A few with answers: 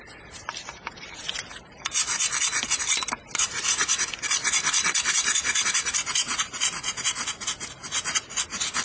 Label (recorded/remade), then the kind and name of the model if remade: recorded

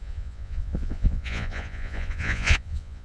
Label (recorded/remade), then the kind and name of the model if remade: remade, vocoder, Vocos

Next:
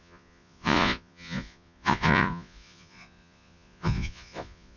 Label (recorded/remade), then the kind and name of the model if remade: remade, vocoder, Vocos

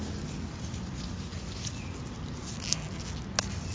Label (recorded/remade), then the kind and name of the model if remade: recorded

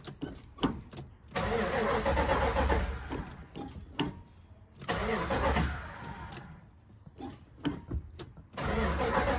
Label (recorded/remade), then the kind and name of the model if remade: recorded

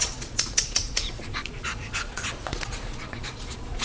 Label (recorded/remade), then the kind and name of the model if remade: remade, vocoder, Vocos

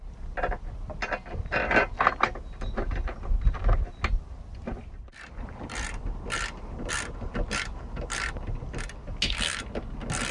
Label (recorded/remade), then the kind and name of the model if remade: recorded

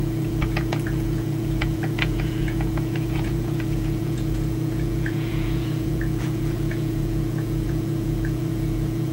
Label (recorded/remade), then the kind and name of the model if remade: remade, vocoder, Vocos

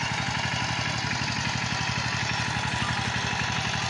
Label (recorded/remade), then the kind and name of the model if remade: recorded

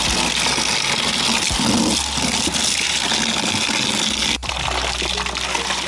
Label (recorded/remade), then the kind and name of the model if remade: recorded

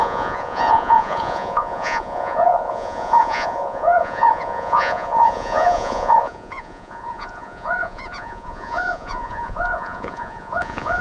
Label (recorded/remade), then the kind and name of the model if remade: remade, vocoder, Vocos